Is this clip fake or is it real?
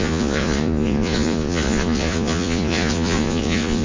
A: fake